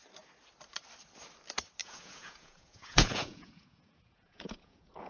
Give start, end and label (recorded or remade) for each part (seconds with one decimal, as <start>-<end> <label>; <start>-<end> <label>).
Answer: 0.0-1.8 recorded; 1.8-5.1 remade